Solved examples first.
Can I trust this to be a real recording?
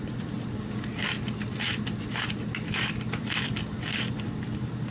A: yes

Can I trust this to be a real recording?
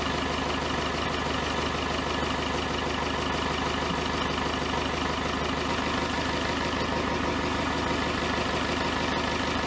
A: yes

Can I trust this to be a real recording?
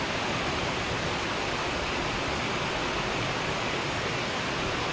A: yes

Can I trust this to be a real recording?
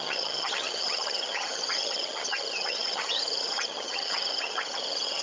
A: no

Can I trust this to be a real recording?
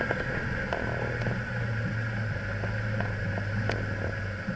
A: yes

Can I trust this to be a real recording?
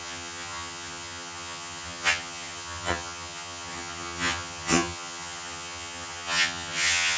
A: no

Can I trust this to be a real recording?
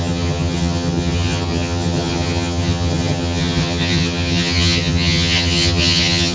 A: no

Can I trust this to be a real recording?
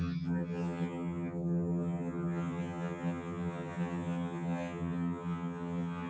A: no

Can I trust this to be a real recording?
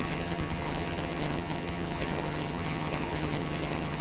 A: no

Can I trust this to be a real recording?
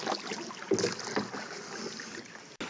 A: yes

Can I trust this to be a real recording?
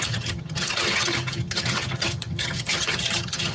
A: no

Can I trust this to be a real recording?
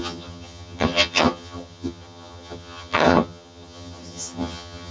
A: no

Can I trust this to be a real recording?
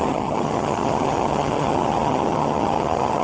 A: no